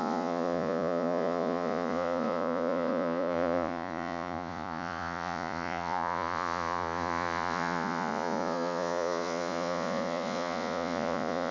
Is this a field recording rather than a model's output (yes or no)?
no